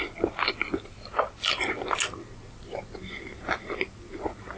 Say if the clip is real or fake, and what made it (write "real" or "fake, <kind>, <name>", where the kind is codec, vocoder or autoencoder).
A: real